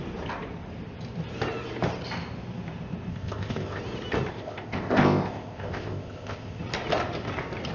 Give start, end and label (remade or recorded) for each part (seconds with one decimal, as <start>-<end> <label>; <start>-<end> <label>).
0.0-3.1 recorded; 3.1-3.8 remade; 3.8-4.3 recorded; 4.3-6.6 remade; 6.6-7.7 recorded